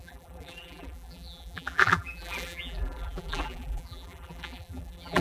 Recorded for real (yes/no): no